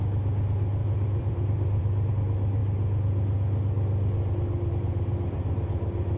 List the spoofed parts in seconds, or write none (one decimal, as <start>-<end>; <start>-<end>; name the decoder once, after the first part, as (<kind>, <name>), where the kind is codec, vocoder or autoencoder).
0.8-2.1 (vocoder, BigVGAN v2)